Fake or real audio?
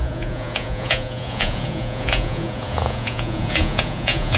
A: fake